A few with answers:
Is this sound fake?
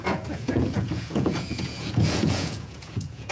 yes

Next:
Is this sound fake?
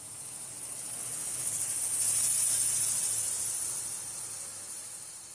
no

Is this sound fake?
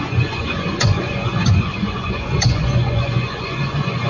yes